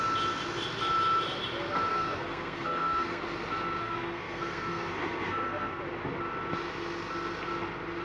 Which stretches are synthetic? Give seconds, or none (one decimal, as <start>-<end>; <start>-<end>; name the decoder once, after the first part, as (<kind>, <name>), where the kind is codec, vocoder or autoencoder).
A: 1.9-3.2 (codec, SNAC); 3.8-5.8